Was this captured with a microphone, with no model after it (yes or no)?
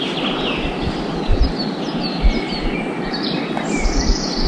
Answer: no